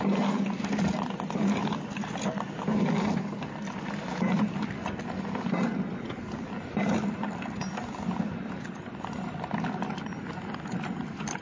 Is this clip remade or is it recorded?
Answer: recorded